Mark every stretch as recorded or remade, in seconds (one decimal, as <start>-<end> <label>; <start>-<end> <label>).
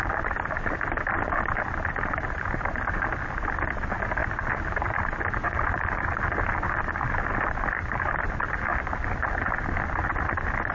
0.0-10.7 recorded